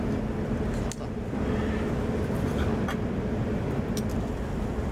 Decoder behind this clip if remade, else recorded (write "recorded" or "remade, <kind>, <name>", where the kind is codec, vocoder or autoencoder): recorded